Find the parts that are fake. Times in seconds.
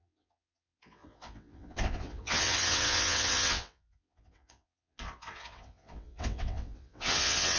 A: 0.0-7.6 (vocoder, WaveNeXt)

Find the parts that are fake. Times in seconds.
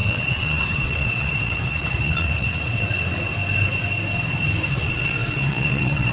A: 0.0-3.3 (vocoder, WaveNeXt); 4.7-6.1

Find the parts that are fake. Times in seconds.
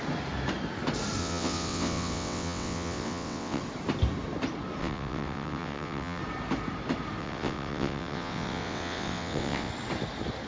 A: 1.2-3.6 (vocoder, WaveNeXt); 4.8-6.2; 7.2-9.7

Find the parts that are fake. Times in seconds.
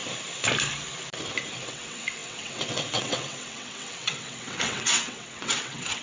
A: 1.7-6.0 (vocoder, WaveNeXt)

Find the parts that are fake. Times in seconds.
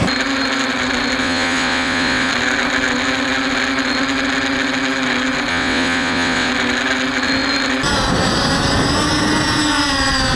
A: 1.2-2.3 (vocoder, WaveNeXt); 5.5-6.5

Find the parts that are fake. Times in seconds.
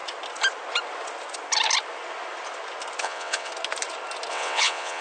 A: 3.0-3.5 (vocoder, WaveNeXt); 4.3-5.0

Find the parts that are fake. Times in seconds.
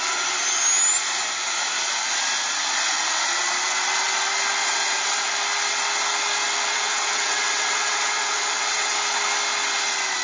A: 4.6-5.3 (vocoder, WaveNeXt); 6.7-9.0